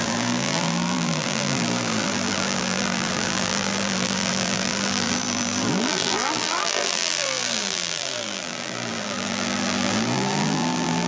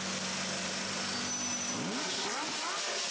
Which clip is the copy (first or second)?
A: first